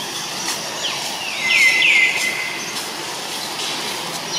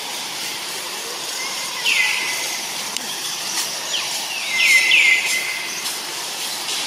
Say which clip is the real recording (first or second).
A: first